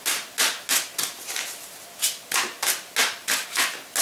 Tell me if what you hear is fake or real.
real